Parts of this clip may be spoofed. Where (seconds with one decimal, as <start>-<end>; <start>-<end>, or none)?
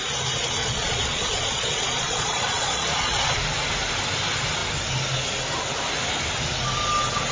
0.6-3.4